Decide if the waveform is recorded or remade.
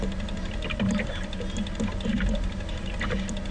recorded